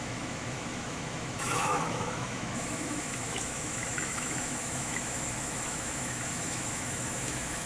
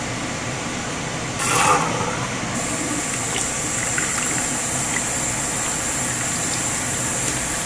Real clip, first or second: second